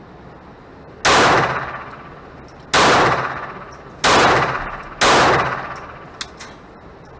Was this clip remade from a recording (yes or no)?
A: no